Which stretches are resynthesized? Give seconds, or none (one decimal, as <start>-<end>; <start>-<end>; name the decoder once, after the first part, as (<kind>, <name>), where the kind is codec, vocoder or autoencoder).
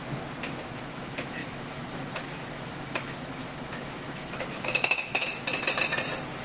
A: 0.9-5.3 (autoencoder, DAC-VAE)